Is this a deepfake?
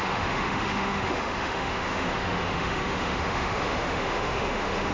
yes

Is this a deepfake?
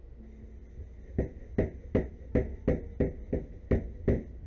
no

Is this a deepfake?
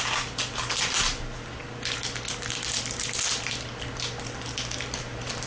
no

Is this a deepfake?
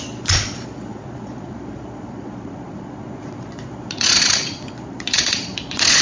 yes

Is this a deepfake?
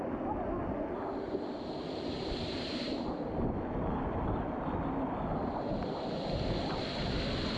no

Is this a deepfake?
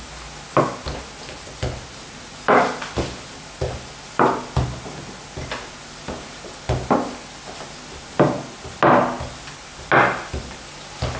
no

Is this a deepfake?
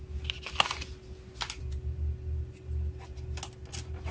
no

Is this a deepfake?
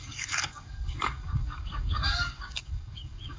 yes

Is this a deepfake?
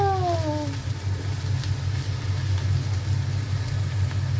no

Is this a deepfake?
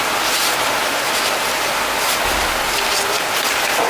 no